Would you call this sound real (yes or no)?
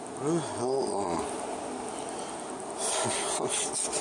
yes